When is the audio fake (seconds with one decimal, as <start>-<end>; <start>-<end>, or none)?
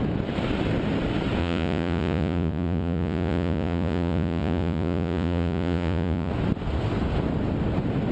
1.4-6.3